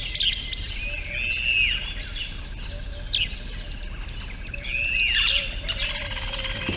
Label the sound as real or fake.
real